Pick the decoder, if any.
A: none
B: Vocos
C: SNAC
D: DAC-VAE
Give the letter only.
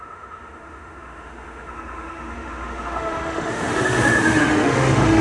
D